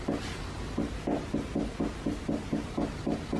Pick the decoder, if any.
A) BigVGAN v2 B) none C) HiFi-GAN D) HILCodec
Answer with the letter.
B